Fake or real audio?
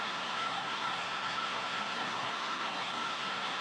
fake